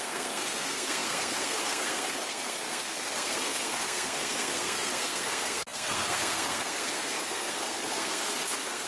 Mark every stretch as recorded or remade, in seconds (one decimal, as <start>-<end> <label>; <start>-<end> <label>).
0.0-8.9 remade